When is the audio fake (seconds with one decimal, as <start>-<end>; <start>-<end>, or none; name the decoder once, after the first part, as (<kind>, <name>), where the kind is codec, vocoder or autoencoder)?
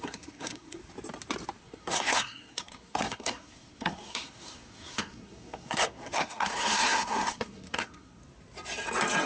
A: 0.0-0.8 (codec, SNAC); 1.6-8.2